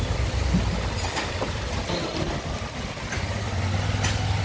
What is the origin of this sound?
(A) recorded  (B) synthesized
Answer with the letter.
A